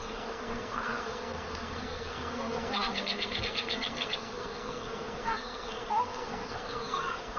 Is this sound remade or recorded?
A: remade